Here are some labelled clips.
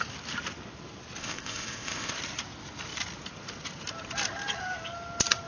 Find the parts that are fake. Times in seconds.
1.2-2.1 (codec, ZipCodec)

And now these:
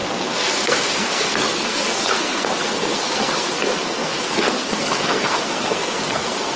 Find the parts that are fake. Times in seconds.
0.0-6.6 (codec, SNAC)

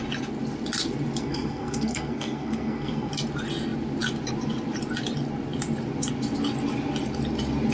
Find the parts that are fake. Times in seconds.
1.2-3.1 (codec, SNAC)

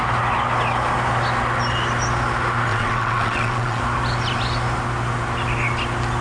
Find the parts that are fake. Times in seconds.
2.7-3.8 (vocoder, WaveNeXt)

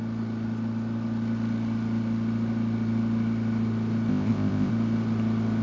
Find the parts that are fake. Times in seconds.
4.1-4.7 (codec, ZipCodec)

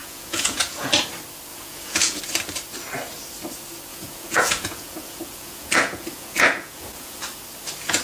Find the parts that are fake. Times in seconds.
0.0-0.9 (vocoder, Vocos); 1.5-2.2; 3.9-7.2